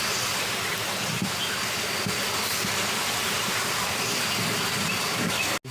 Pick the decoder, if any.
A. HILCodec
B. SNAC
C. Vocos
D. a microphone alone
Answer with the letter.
D